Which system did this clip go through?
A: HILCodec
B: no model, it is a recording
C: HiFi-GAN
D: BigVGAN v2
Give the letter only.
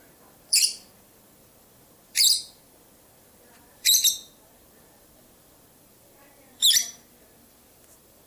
D